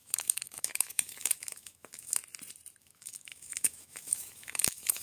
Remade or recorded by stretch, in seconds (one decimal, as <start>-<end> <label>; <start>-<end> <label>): 0.0-2.2 remade; 2.2-2.8 recorded; 2.8-5.0 remade

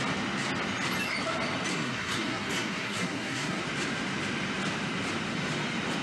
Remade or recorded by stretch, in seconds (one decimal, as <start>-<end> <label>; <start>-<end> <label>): 0.0-1.7 recorded; 1.7-3.6 remade; 3.6-6.0 recorded

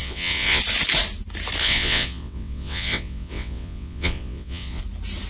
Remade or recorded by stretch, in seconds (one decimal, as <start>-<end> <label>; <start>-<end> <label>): 0.0-0.6 remade; 0.6-1.6 recorded; 1.6-4.8 remade; 4.8-5.3 recorded

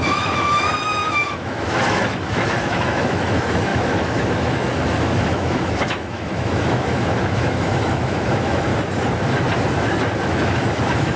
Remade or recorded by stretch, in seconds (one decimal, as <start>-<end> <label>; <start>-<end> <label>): 0.0-8.7 remade; 8.7-10.2 recorded; 10.2-11.2 remade

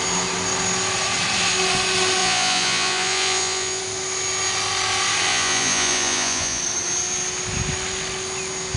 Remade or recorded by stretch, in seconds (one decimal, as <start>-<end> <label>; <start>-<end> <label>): 0.0-2.2 recorded; 2.2-3.8 remade; 3.8-5.3 recorded; 5.3-6.6 remade; 6.6-8.8 recorded